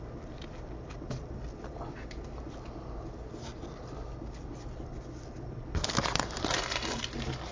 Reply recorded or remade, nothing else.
recorded